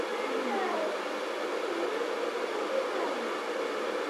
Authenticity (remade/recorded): recorded